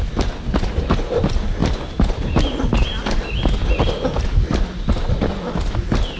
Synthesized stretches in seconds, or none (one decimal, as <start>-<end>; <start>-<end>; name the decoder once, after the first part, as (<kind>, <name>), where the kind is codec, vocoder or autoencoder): none